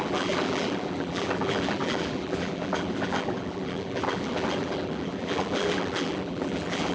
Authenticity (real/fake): fake